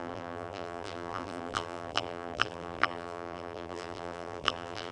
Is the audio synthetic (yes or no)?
yes